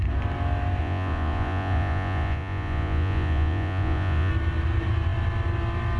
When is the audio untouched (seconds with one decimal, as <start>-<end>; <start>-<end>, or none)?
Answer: 0.0-0.8; 4.3-6.0